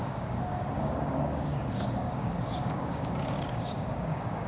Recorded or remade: remade